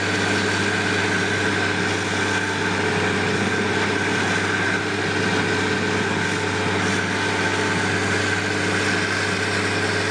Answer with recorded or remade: recorded